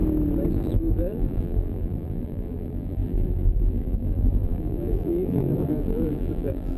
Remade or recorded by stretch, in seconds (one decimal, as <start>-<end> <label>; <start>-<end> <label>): 0.0-0.5 recorded; 0.5-6.8 remade